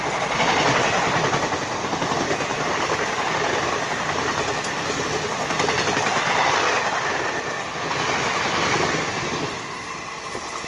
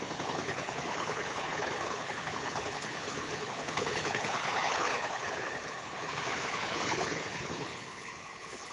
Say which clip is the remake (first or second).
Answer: second